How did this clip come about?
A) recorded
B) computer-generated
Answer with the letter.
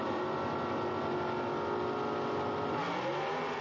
A